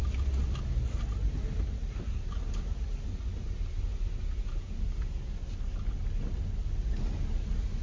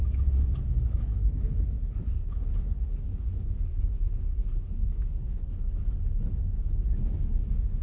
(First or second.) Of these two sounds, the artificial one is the second